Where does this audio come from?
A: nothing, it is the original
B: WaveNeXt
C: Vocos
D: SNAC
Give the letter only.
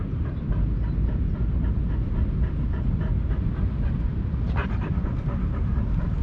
A